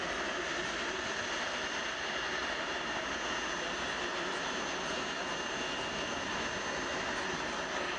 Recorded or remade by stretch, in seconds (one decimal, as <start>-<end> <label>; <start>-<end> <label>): 0.0-2.4 recorded; 2.4-3.1 remade; 3.1-8.0 recorded

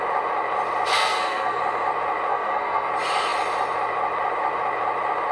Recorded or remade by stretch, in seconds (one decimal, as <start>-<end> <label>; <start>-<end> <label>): 0.0-0.9 recorded; 0.9-1.6 remade; 1.6-2.3 recorded; 2.3-2.9 remade; 2.9-5.3 recorded